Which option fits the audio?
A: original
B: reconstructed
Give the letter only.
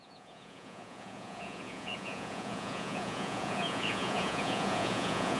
B